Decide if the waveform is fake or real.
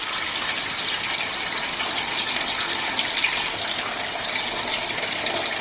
real